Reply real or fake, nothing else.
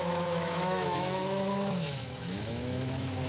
fake